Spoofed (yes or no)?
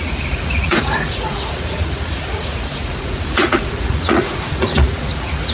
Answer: yes